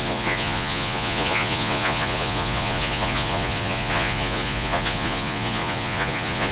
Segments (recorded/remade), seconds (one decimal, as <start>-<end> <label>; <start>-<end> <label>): 0.0-6.5 remade